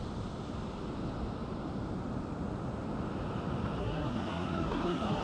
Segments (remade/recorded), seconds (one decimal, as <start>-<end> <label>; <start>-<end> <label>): 0.0-3.8 recorded; 3.8-5.2 remade